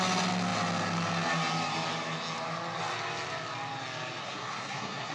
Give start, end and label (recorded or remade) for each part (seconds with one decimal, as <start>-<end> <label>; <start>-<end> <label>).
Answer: 0.0-4.2 recorded; 4.2-5.1 remade